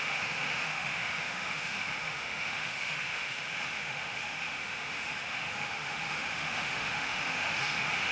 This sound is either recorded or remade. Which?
remade